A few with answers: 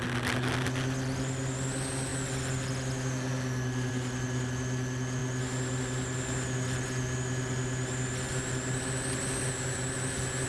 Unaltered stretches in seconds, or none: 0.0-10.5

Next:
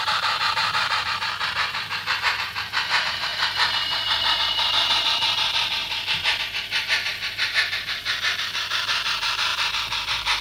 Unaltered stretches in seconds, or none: none

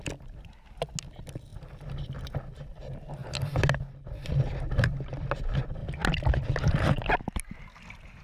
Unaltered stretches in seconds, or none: 0.0-8.2

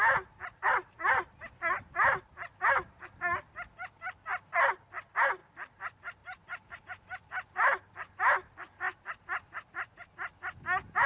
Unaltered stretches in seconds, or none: 0.0-5.4; 6.8-11.1